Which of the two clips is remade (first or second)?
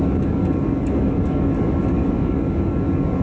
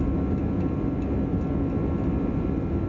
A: first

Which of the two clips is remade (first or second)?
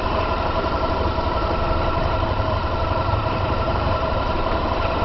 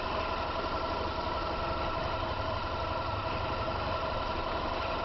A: first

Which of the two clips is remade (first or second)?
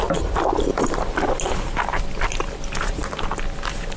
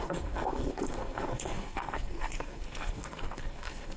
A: second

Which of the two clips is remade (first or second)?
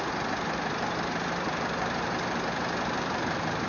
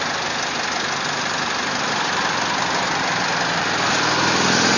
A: first